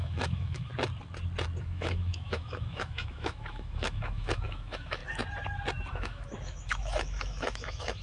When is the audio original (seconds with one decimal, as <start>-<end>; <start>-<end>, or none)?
0.7-1.6; 5.0-5.9

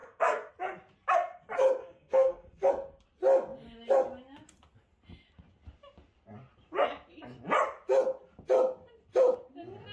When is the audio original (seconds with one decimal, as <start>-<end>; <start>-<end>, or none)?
0.5-1.8; 2.7-9.9

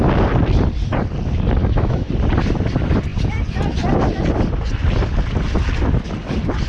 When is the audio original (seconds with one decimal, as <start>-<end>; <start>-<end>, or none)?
0.0-1.6; 2.1-6.7

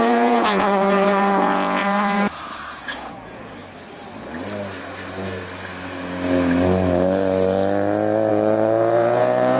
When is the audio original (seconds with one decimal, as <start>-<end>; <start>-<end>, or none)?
3.6-8.3

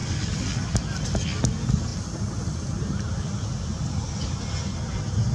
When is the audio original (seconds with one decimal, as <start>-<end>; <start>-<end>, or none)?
0.7-5.3

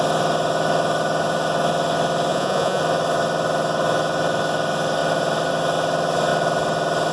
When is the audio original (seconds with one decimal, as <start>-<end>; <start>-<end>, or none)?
0.0-2.3; 2.8-7.1